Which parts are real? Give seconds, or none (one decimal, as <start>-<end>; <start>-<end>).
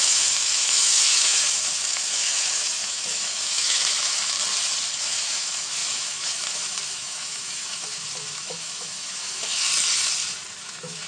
4.2-5.0; 9.7-10.6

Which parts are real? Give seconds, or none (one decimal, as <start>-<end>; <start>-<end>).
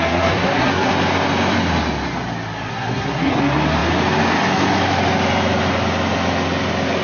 0.9-2.7; 3.4-7.0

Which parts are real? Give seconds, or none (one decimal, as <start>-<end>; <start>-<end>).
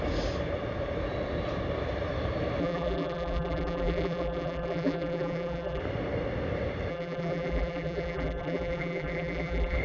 0.0-2.6; 5.8-6.9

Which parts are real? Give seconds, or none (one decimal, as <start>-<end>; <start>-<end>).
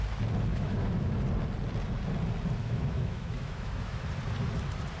0.0-0.5; 1.1-2.6; 3.9-5.0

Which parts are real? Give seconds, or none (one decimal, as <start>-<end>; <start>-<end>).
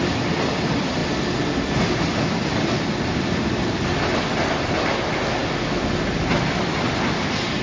0.0-7.6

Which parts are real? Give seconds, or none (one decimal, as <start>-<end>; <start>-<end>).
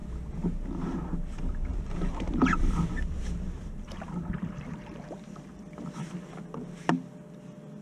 1.0-1.7; 6.4-7.8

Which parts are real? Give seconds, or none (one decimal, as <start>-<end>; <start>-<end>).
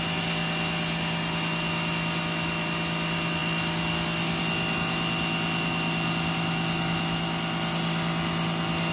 0.0-8.9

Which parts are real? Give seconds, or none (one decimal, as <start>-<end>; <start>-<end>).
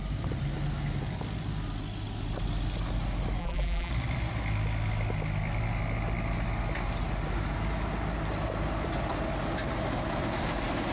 0.0-3.4; 3.9-10.9